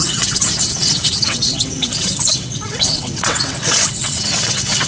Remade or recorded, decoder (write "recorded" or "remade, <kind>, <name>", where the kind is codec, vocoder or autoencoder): remade, vocoder, WaveNeXt